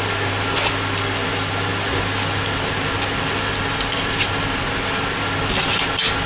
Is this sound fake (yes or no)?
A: no